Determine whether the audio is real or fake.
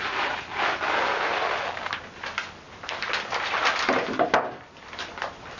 real